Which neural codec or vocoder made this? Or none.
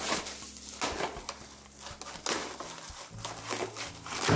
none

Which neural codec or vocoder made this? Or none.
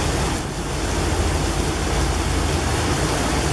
none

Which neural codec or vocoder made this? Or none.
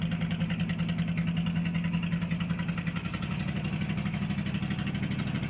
none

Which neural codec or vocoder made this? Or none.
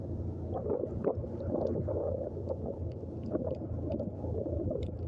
vocoder, BigVGAN v2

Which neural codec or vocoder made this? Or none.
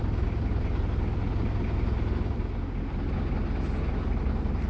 none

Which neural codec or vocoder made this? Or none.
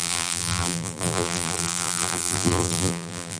vocoder, BigVGAN v2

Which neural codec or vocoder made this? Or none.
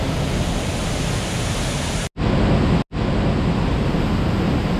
none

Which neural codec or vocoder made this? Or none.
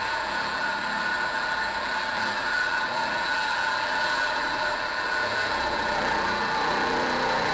vocoder, BigVGAN v2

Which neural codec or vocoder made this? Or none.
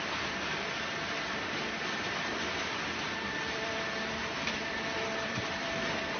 vocoder, BigVGAN v2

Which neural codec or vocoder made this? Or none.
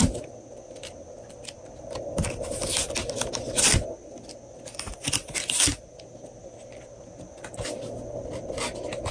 none